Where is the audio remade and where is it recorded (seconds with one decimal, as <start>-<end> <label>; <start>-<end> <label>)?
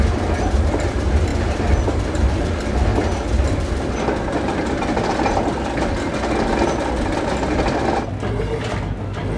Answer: 0.0-9.4 recorded